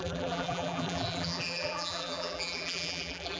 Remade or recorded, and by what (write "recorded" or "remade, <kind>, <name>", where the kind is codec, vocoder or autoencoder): remade, vocoder, BigVGAN v2